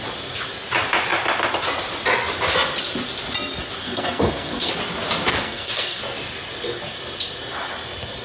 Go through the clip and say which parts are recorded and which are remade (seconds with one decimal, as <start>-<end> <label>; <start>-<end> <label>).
0.0-3.8 recorded; 3.8-4.7 remade; 4.7-5.3 recorded; 5.3-6.0 remade; 6.0-8.2 recorded